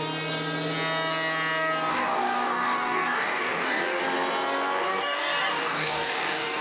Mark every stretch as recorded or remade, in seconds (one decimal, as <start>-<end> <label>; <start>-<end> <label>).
0.0-1.9 recorded; 1.9-4.0 remade; 4.0-4.8 recorded; 4.8-6.6 remade